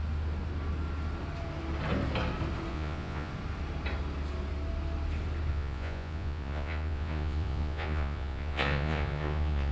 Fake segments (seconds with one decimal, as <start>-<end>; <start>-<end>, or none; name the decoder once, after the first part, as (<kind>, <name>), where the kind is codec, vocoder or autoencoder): 2.7-3.3 (vocoder, Vocos); 5.5-9.7